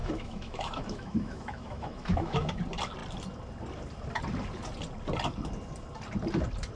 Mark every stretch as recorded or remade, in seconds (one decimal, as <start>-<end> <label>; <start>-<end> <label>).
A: 0.0-2.6 remade; 2.6-6.8 recorded